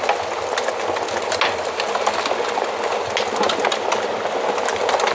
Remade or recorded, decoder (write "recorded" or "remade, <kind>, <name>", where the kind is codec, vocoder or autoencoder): recorded